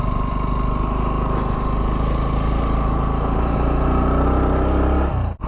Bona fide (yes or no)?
yes